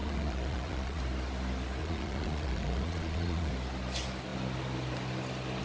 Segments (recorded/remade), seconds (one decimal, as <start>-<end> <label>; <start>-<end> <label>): 0.0-1.0 remade; 1.0-1.8 recorded; 1.8-3.5 remade; 3.5-5.6 recorded